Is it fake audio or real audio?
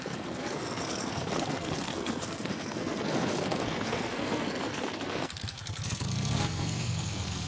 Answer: fake